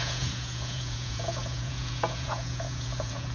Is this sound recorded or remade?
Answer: remade